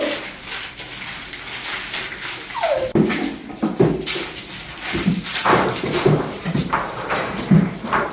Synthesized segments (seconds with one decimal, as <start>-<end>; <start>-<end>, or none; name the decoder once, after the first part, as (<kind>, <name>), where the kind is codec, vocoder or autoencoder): 5.4-6.8 (vocoder, BigVGAN v2)